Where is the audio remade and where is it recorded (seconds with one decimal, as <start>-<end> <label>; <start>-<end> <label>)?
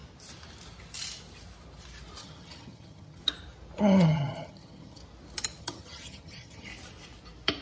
0.0-2.2 recorded; 2.2-3.2 remade; 3.2-3.8 recorded; 3.8-5.0 remade; 5.0-5.6 recorded; 5.6-6.7 remade; 6.7-7.6 recorded